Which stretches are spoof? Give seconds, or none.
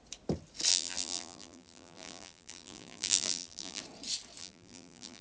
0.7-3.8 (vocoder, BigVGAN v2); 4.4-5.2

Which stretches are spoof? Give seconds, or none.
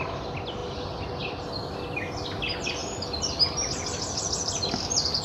0.6-1.1 (vocoder, BigVGAN v2)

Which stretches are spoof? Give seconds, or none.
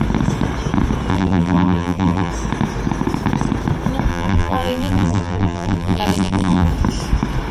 1.1-2.3 (vocoder, BigVGAN v2); 4.1-6.7